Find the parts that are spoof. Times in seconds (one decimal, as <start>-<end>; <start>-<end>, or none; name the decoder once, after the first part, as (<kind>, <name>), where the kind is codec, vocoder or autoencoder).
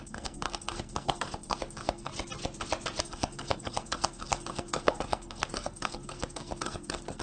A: 0.0-2.1 (codec, SNAC); 3.0-7.2